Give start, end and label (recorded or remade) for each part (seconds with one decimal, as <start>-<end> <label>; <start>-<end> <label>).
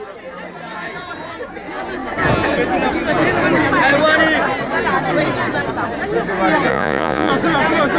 0.0-6.7 recorded; 6.7-7.3 remade; 7.3-8.0 recorded